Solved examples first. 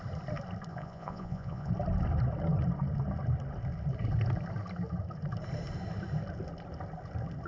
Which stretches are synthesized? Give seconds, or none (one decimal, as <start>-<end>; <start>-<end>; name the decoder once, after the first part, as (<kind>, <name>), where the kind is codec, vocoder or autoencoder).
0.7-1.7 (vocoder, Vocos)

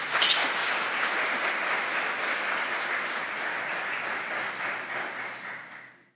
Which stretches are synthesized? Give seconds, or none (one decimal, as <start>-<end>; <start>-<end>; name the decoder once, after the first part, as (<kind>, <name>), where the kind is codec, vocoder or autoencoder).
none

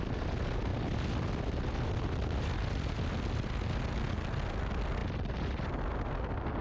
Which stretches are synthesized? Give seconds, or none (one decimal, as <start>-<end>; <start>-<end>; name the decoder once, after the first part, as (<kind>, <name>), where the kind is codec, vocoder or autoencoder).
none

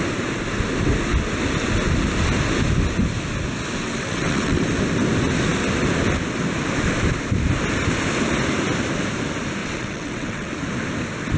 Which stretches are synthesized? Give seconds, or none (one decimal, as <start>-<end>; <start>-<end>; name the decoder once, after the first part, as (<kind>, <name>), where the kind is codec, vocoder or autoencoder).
3.8-4.6 (vocoder, WaveNeXt); 9.6-10.5

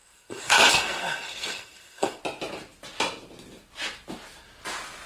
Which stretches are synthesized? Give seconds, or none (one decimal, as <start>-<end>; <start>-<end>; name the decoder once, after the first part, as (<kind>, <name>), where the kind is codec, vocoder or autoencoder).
0.0-2.2 (codec, SNAC)

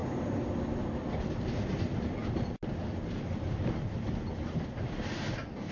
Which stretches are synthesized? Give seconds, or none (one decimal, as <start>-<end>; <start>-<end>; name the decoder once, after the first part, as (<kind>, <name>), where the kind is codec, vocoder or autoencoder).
none